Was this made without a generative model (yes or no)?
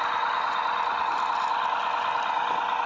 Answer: yes